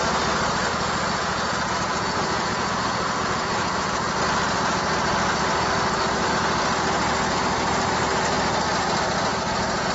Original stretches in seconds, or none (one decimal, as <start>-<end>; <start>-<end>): 0.0-0.7; 4.2-9.3